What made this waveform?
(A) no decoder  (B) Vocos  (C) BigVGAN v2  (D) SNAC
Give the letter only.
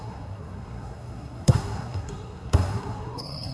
D